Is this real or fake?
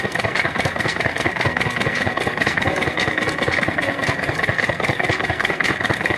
fake